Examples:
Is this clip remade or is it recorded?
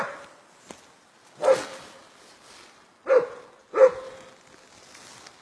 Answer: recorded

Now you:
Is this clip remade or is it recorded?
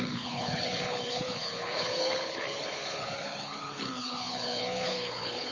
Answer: remade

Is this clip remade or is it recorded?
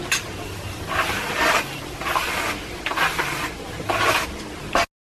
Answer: recorded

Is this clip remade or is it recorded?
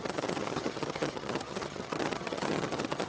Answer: remade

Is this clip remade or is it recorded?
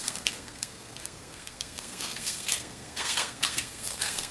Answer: remade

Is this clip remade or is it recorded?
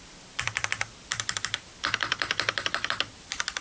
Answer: remade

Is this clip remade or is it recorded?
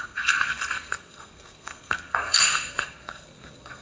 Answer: remade